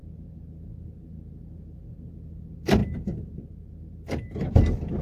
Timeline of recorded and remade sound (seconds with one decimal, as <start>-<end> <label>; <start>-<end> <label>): 0.0-5.0 recorded